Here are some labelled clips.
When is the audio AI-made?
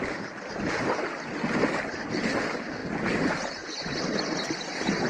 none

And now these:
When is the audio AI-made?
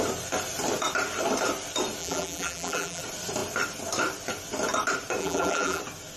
2.0-3.0 (vocoder, BigVGAN v2); 5.2-5.8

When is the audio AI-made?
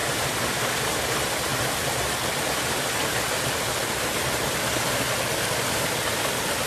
0.0-0.5 (vocoder, BigVGAN v2)